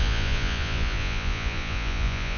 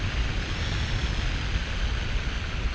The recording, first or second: second